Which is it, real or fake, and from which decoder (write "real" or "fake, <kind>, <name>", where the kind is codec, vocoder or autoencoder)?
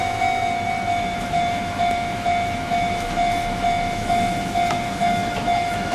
fake, autoencoder, DAC-VAE